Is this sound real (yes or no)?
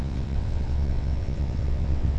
no